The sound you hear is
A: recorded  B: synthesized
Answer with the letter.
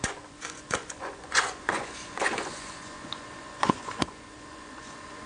B